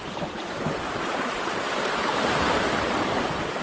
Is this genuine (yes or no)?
no